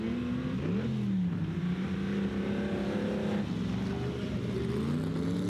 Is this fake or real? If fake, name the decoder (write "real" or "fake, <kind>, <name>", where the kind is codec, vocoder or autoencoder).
real